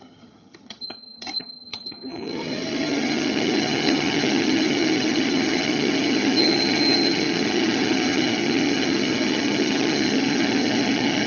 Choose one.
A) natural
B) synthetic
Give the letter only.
B